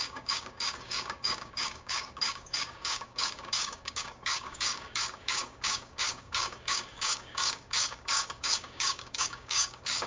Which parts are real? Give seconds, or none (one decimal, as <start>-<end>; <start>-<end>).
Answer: none